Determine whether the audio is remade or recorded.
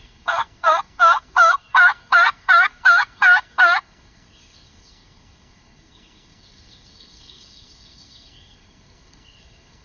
remade